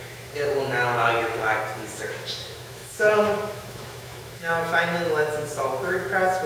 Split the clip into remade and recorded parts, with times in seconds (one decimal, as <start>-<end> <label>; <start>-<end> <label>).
0.0-6.5 remade